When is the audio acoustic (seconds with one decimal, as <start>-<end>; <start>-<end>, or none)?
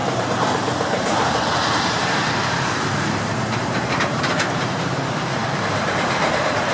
none